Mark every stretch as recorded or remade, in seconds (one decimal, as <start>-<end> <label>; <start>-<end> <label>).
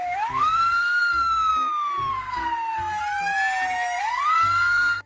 0.0-1.5 remade; 1.5-2.1 recorded; 2.1-3.0 remade; 3.0-4.0 recorded; 4.0-5.1 remade